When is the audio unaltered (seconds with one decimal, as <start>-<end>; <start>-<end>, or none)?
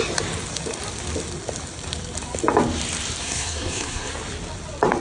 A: 0.0-3.2; 4.1-5.0